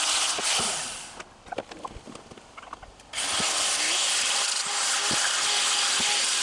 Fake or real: real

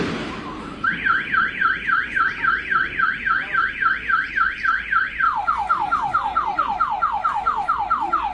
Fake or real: fake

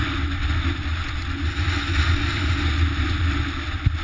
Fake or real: real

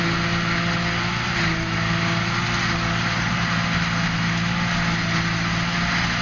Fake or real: real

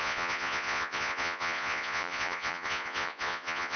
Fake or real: fake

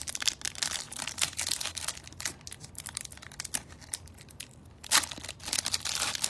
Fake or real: real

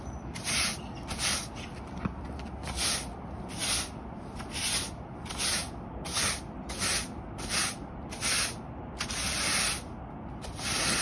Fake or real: real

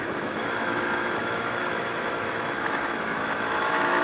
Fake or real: fake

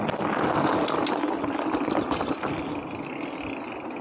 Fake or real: real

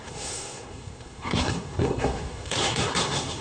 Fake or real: fake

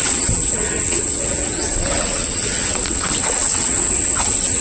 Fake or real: fake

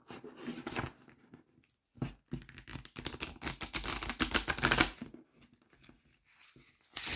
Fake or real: real